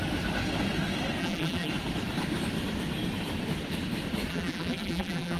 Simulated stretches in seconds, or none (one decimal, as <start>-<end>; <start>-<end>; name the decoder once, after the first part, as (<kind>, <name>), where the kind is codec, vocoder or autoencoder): 1.2-1.7 (vocoder, BigVGAN v2); 4.3-5.4